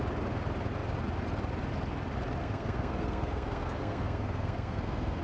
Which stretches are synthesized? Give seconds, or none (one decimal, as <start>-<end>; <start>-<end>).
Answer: 2.4-5.2